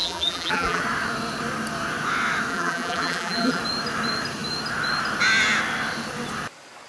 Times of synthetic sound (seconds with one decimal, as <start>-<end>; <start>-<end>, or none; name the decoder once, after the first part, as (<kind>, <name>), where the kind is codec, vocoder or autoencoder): 0.0-0.8 (vocoder, BigVGAN v2); 2.5-3.6